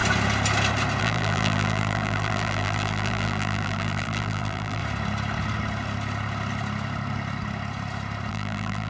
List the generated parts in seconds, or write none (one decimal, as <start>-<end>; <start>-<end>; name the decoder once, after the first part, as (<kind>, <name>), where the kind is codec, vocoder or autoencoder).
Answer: 1.0-4.8 (vocoder, BigVGAN v2); 8.3-8.9